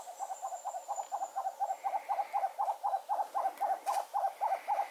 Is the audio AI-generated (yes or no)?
no